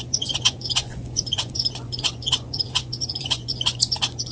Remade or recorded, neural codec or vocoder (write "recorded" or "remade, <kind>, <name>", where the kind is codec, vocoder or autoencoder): remade, vocoder, Vocos